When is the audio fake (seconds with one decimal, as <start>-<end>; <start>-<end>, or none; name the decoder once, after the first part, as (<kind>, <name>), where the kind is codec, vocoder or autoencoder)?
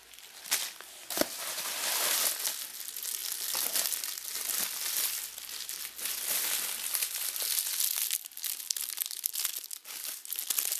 none